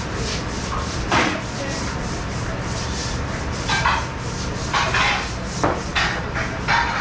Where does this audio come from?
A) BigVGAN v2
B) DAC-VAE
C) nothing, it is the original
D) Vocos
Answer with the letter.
C